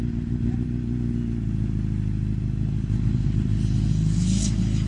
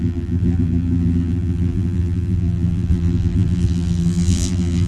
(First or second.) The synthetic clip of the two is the second